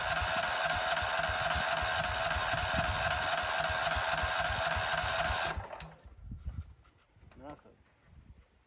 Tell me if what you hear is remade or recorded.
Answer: recorded